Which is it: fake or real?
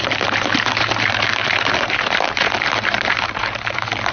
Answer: fake